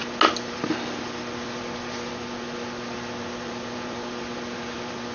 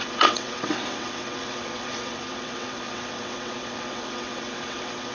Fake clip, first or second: second